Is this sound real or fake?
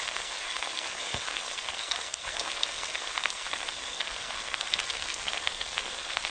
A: fake